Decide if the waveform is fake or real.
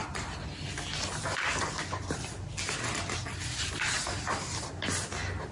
real